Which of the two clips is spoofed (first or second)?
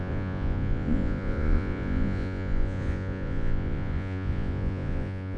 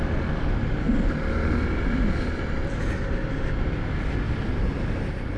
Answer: first